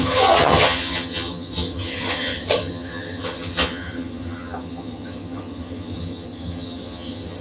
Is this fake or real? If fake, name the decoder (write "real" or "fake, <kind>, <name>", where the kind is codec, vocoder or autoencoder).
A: fake, vocoder, HiFi-GAN